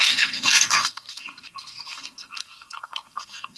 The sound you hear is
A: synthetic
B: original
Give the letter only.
A